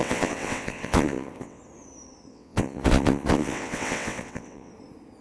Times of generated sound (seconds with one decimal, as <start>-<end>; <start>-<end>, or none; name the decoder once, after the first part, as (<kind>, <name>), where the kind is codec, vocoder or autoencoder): 0.0-1.6 (vocoder, WaveNeXt); 2.3-4.7